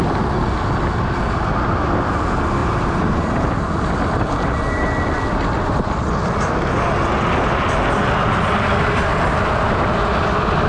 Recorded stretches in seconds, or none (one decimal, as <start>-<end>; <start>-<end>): 0.0-2.6; 3.7-10.7